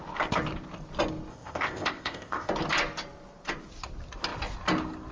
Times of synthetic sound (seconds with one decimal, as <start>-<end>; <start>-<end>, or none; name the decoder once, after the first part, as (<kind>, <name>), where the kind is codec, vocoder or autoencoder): 1.3-2.5 (codec, ZipCodec)